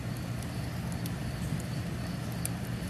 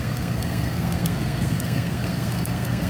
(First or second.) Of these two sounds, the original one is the first